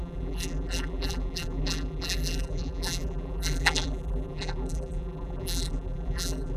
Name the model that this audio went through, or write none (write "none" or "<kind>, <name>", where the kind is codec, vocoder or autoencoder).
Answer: vocoder, BigVGAN v2